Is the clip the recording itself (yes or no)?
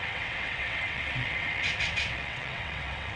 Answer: no